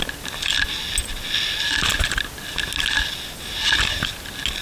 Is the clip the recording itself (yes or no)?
yes